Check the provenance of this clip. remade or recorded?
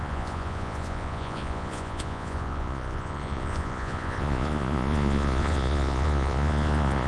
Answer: remade